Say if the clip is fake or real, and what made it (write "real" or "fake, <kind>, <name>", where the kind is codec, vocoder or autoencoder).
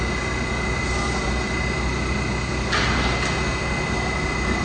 real